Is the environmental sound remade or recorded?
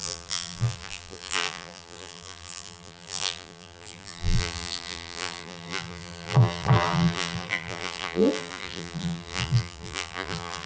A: remade